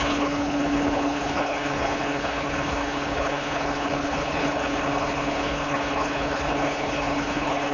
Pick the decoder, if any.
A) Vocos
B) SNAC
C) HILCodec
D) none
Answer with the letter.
C